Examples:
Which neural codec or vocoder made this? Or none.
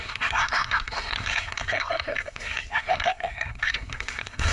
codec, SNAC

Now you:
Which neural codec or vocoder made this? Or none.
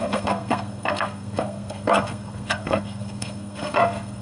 codec, SNAC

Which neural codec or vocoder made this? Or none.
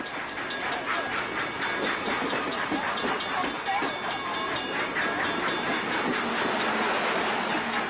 none